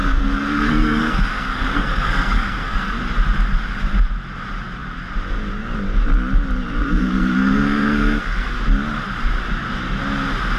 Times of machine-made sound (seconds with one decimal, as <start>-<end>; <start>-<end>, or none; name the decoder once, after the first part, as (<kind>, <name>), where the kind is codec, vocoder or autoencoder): 0.0-3.0 (codec, SNAC); 6.8-8.6